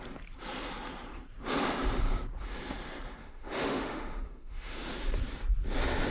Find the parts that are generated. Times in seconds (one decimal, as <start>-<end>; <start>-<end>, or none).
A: 3.2-4.9